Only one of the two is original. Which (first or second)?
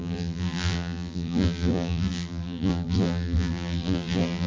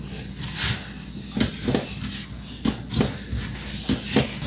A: second